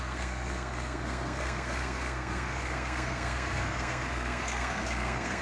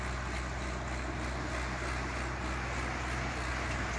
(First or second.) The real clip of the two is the second